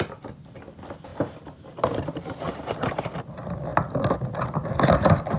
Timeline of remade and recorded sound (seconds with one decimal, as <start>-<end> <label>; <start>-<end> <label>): 0.0-1.1 recorded; 1.1-3.0 remade; 3.0-5.4 recorded